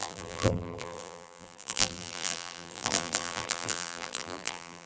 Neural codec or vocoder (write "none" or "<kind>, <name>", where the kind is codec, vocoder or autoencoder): vocoder, BigVGAN v2